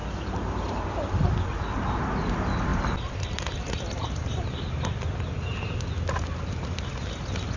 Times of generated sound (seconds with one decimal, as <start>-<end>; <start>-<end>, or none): 0.0-0.9; 2.7-5.8